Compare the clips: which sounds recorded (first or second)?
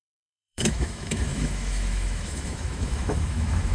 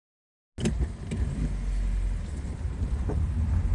second